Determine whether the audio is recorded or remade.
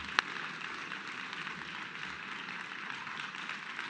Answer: recorded